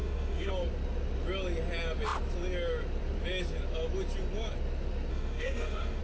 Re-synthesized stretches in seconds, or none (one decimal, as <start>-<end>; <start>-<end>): 0.0-0.5; 5.1-6.0